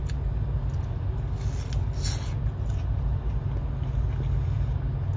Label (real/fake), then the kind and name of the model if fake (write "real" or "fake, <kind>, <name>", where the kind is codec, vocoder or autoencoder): real